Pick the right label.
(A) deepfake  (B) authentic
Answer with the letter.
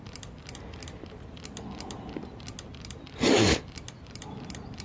B